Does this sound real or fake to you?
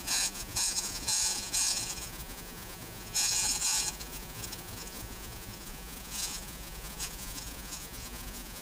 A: fake